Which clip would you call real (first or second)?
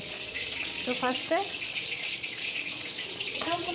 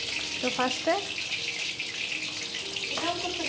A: second